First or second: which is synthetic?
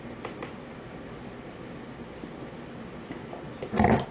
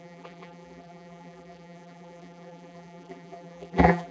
second